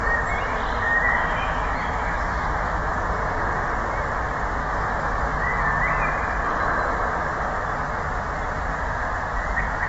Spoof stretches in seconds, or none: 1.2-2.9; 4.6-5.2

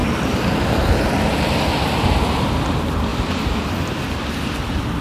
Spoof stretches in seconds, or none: none

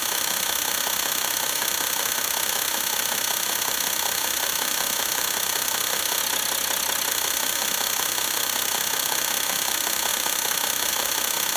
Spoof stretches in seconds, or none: 0.0-6.2; 7.1-11.6

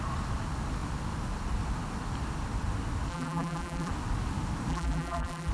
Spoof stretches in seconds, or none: 3.1-3.9; 4.7-5.5

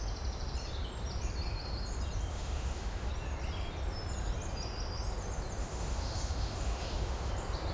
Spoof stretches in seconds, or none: 2.3-3.1; 5.6-7.3

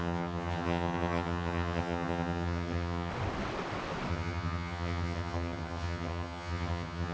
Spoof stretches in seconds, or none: 0.0-3.1; 4.1-7.1

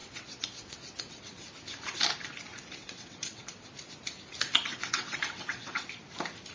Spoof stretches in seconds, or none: 0.0-1.5; 2.8-3.5; 4.7-5.9